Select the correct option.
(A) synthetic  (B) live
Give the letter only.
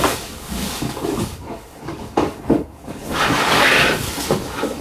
A